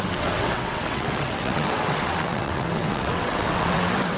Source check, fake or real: fake